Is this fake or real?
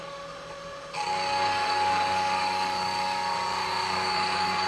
fake